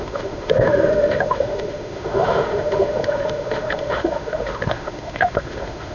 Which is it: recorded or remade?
remade